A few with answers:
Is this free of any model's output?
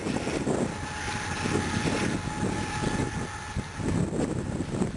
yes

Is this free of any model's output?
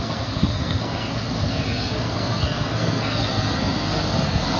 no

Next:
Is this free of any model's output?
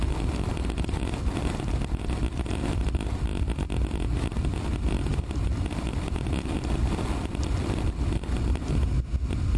yes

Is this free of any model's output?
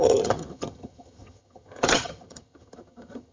no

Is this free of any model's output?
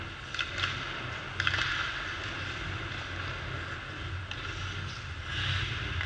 yes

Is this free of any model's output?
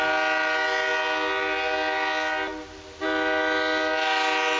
yes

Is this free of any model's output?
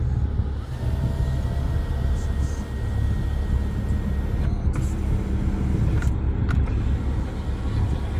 yes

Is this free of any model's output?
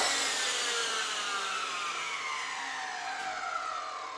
yes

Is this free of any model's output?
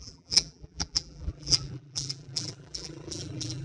no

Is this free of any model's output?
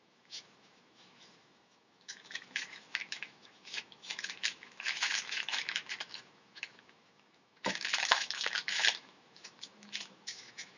no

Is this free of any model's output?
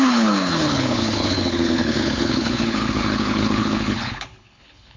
no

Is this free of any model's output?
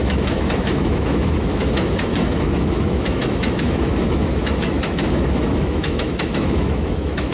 no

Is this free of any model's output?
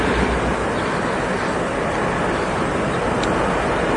yes